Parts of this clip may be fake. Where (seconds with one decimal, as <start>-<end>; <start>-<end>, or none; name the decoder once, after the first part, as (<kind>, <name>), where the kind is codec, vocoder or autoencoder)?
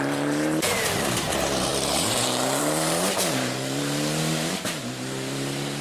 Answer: 0.0-5.8 (vocoder, BigVGAN v2)